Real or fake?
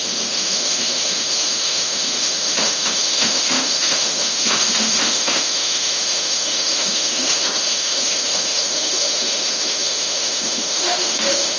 fake